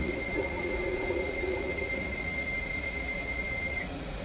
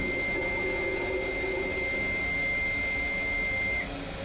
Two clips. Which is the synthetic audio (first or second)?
first